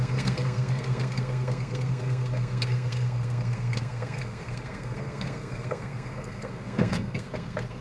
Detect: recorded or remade remade